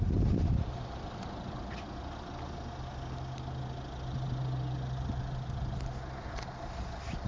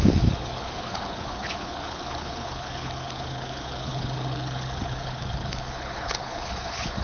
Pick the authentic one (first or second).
first